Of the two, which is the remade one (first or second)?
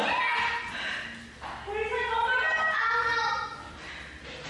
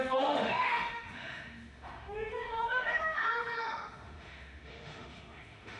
second